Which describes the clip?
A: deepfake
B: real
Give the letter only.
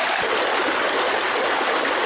B